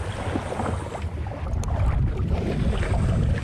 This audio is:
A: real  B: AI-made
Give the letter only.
A